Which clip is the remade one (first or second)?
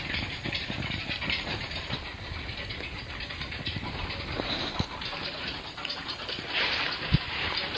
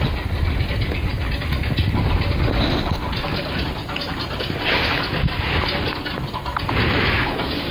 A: first